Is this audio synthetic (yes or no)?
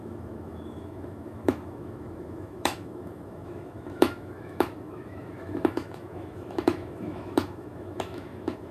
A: yes